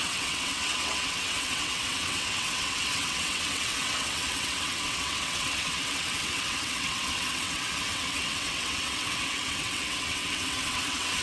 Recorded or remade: remade